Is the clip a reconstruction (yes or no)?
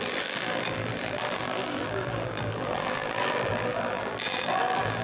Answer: yes